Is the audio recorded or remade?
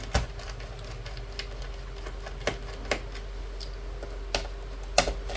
recorded